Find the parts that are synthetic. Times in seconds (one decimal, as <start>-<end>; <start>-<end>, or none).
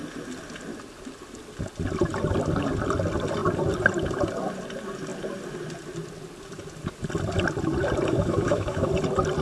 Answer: 8.1-8.9